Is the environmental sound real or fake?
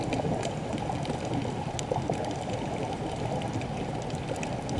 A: real